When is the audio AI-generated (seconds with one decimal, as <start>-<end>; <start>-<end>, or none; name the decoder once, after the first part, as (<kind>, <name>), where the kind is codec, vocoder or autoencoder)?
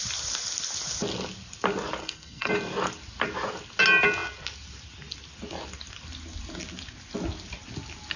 2.0-2.5 (codec, SNAC)